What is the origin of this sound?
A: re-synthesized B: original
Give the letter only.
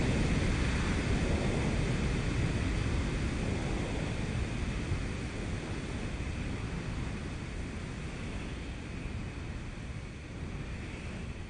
B